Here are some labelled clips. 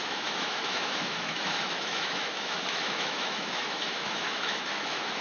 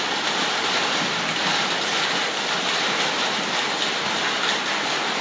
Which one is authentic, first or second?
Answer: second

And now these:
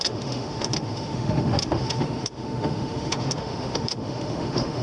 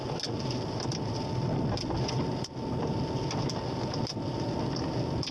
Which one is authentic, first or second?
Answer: second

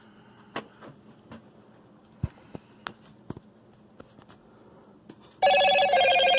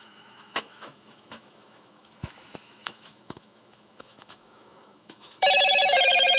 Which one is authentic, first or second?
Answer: first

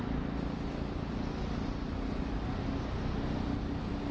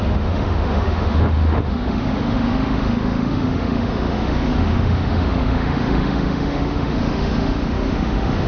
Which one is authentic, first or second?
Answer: first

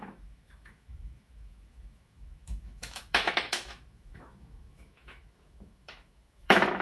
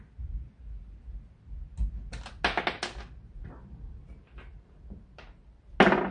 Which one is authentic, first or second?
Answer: second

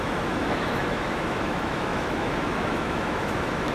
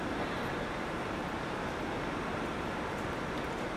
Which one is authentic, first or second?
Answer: second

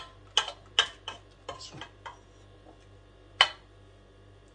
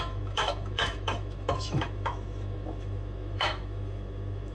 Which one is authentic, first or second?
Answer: first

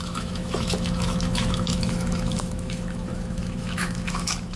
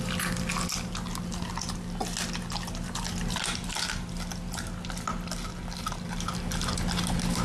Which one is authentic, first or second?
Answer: second